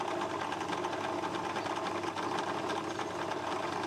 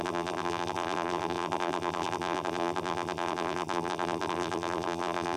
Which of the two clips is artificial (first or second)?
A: second